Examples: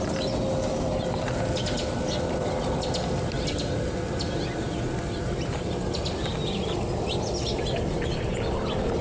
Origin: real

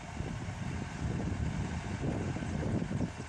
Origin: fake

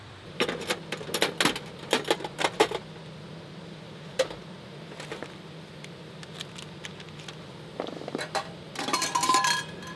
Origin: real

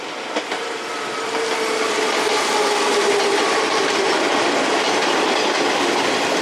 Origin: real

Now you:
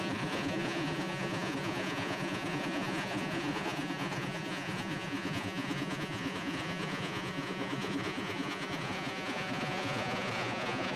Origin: fake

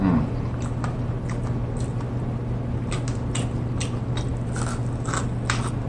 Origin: real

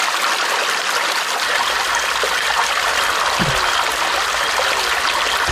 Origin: real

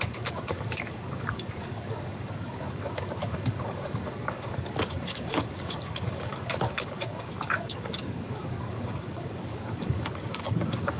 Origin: fake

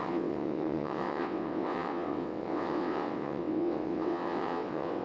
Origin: fake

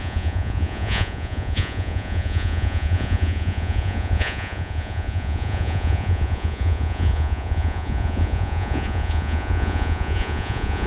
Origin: fake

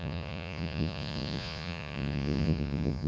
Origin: fake